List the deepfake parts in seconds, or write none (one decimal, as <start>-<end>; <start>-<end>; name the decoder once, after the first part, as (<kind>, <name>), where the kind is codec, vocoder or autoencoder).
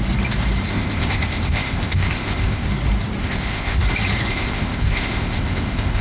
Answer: 0.7-2.7 (codec, ZipCodec); 3.2-3.8; 4.3-6.0